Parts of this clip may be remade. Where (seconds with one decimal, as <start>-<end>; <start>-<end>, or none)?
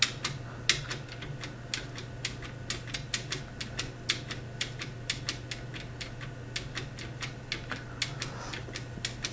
none